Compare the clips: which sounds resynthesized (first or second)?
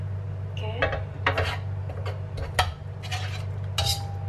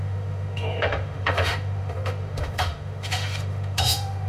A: second